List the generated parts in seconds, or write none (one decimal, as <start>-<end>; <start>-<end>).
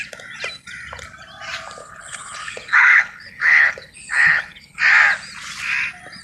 1.8-4.8